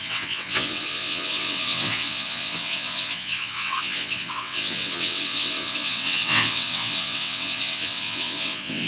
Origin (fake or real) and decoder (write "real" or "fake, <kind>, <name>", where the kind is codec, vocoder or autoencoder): fake, vocoder, WaveNeXt